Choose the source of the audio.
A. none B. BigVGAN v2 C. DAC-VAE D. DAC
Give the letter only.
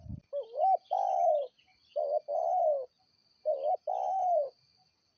A